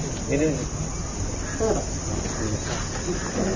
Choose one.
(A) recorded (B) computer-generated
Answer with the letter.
A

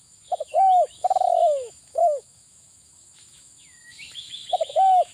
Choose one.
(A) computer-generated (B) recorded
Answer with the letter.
A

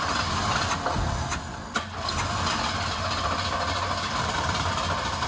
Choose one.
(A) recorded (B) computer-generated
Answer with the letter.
A